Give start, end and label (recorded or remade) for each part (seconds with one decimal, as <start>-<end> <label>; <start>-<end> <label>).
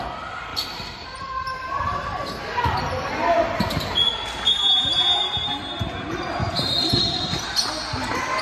0.0-0.5 recorded; 0.5-1.8 remade; 1.8-6.4 recorded; 6.4-6.9 remade; 6.9-8.4 recorded